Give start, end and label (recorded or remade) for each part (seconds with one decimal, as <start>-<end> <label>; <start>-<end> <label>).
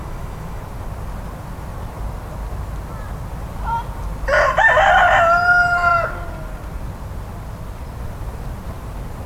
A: 0.0-0.6 remade; 0.6-9.3 recorded